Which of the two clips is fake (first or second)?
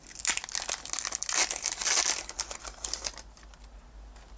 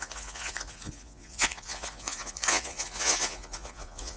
second